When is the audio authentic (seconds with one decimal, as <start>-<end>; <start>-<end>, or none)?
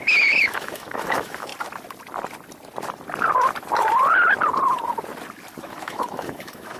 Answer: 1.5-5.6